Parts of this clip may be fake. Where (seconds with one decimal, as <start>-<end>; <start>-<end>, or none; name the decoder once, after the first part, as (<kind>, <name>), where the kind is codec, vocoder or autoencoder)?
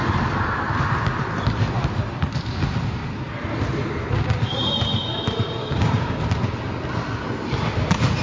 5.6-6.2 (codec, DAC)